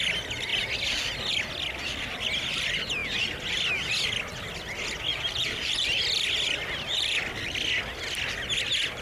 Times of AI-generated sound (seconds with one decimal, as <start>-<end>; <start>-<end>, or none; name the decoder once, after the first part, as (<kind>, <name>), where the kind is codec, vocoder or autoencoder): 5.1-6.0 (vocoder, BigVGAN v2)